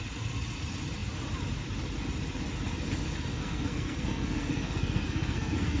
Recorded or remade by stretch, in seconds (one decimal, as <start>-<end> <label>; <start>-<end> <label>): 0.0-3.3 recorded; 3.3-5.8 remade